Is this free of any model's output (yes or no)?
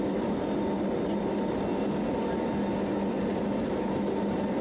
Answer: yes